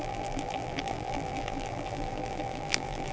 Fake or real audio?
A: fake